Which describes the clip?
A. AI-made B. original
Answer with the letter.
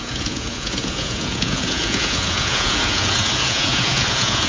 A